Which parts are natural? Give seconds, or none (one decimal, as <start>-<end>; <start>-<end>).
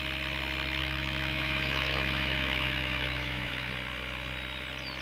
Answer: 0.0-0.8; 3.7-5.0